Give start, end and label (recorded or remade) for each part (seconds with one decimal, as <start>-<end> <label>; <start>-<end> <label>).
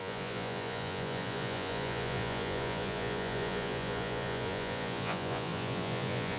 0.0-6.4 remade